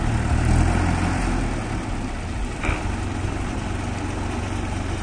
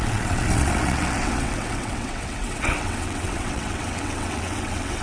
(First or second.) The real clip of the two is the first